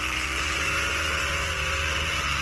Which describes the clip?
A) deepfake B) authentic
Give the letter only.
A